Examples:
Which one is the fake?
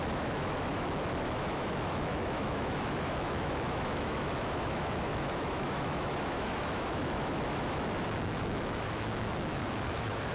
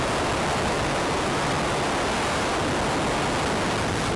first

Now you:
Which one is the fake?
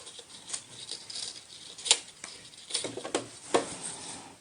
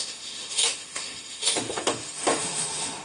second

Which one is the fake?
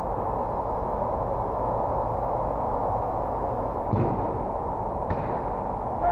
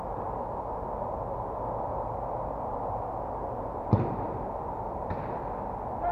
first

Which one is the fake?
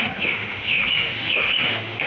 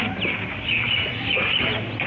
first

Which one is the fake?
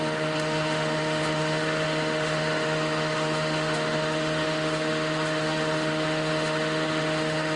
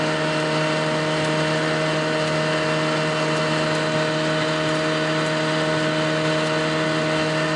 first